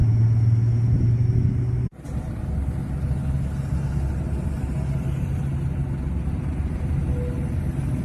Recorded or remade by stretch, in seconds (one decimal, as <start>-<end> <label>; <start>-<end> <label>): 0.0-8.0 recorded